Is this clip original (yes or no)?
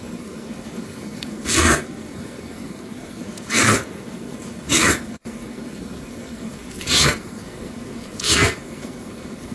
no